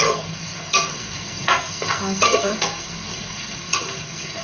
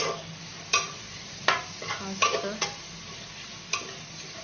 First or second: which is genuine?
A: second